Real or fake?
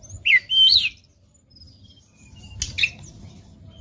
real